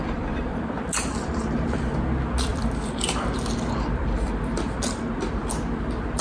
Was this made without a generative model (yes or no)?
no